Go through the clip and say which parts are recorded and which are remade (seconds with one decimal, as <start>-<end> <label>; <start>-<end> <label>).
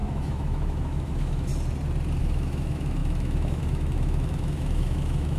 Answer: 0.0-1.5 remade; 1.5-2.2 recorded; 2.2-5.4 remade